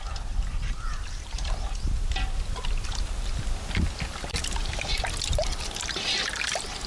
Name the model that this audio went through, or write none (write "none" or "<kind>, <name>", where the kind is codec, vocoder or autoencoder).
none